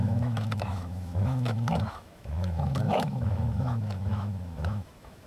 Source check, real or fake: fake